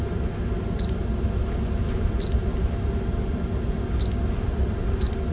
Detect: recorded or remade recorded